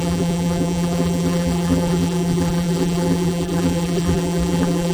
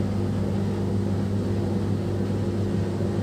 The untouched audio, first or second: second